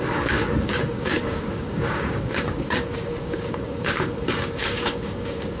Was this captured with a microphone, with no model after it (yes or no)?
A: no